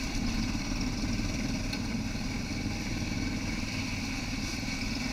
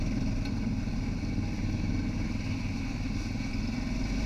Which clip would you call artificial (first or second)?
first